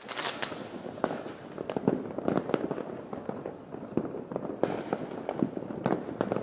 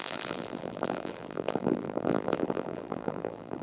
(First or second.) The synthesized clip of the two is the second